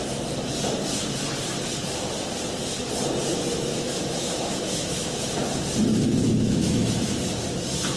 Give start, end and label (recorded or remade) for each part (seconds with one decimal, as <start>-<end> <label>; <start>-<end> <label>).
0.0-3.7 recorded; 3.7-5.2 remade; 5.2-5.9 recorded; 5.9-7.3 remade; 7.3-8.0 recorded